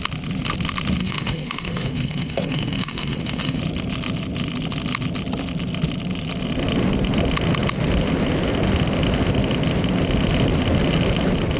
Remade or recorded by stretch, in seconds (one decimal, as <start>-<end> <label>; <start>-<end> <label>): 0.0-1.0 recorded; 1.0-3.6 remade; 3.6-11.6 recorded